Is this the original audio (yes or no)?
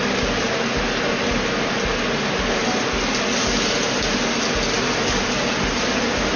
yes